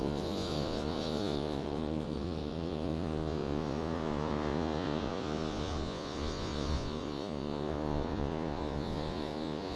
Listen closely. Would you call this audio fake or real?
fake